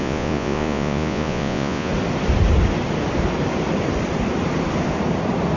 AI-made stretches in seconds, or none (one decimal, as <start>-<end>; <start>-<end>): 0.0-1.9